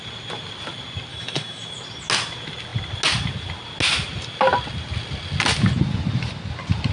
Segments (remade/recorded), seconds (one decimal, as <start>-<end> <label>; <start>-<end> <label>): 0.0-1.1 recorded; 1.1-1.7 remade; 1.7-6.9 recorded